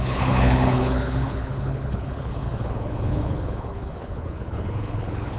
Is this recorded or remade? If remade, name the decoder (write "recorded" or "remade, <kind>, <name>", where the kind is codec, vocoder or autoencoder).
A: remade, codec, HILCodec